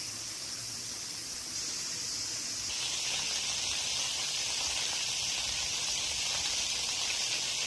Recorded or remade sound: recorded